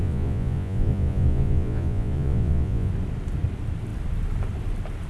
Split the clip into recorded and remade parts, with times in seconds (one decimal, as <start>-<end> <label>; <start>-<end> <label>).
0.0-2.9 remade; 2.9-5.1 recorded